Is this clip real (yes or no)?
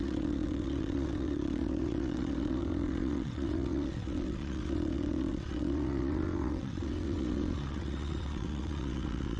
no